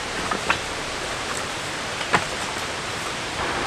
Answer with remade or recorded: remade